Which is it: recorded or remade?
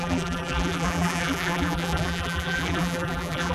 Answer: remade